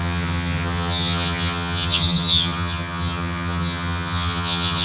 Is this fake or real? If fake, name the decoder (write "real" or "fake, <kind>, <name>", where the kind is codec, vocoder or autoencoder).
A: fake, vocoder, HiFi-GAN